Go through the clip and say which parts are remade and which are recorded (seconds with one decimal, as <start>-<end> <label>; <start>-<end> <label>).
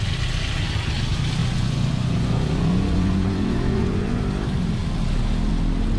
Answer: 0.0-1.4 recorded; 1.4-4.2 remade; 4.2-6.0 recorded